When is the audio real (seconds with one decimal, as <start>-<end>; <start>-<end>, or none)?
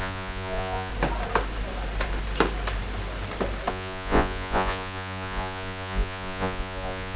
0.9-3.7